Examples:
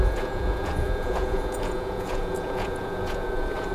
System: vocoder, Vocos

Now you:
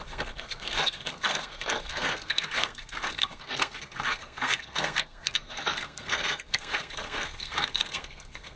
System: codec, SNAC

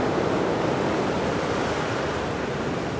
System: none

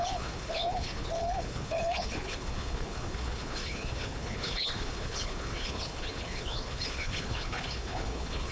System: codec, HILCodec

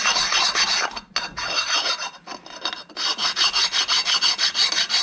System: none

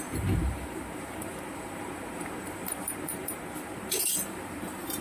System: vocoder, BigVGAN v2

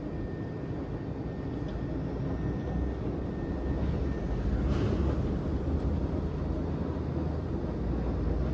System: none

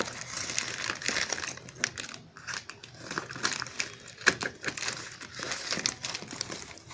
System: none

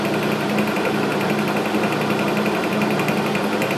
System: none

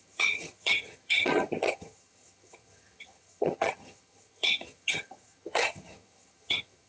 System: vocoder, HiFi-GAN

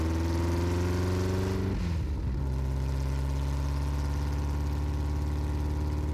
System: none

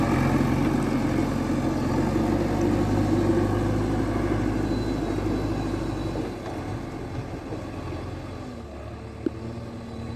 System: none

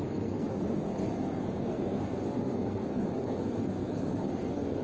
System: codec, SNAC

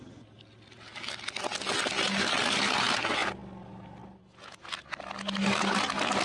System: none